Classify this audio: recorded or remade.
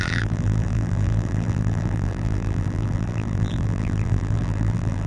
remade